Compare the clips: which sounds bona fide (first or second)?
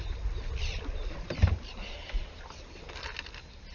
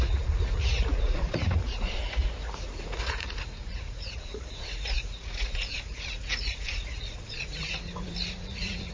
first